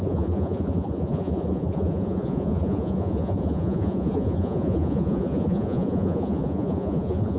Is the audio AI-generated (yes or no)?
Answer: yes